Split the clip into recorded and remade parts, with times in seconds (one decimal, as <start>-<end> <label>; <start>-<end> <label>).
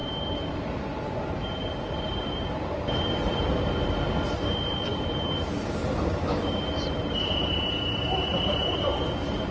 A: 0.0-3.5 remade; 3.5-4.9 recorded; 4.9-9.5 remade